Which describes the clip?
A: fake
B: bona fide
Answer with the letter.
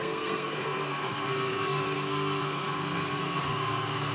A